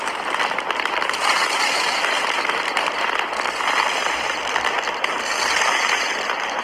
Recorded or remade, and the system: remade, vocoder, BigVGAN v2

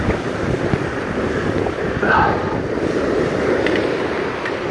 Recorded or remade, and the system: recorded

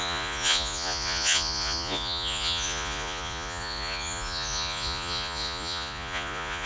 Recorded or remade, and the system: remade, vocoder, Vocos